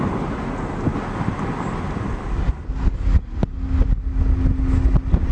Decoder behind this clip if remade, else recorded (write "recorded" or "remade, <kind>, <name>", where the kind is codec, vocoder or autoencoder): recorded